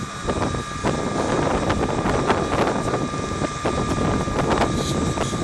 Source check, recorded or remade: recorded